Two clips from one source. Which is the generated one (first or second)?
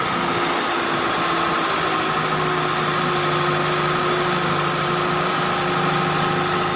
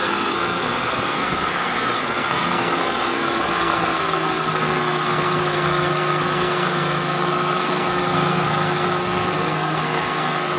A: second